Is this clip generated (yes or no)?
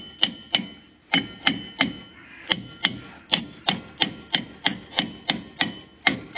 no